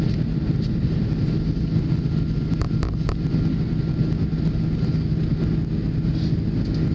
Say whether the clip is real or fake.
real